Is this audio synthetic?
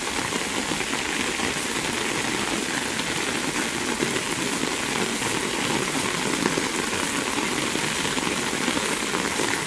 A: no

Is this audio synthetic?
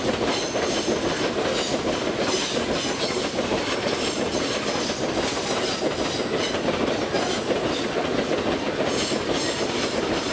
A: no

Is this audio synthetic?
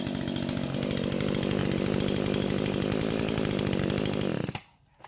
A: no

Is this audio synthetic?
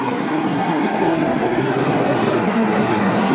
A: yes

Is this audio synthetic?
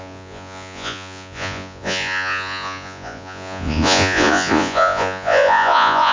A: yes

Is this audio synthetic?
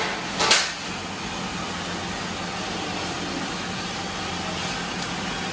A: no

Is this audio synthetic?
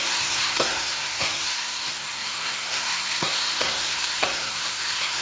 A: yes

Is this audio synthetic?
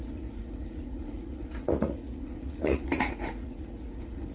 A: yes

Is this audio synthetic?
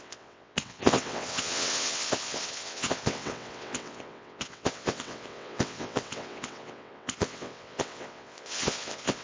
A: yes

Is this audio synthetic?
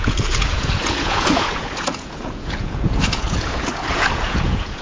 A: yes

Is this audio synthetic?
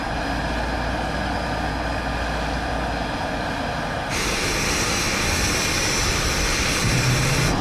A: no